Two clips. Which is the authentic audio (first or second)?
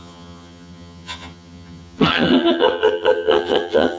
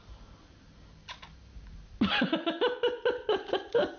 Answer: second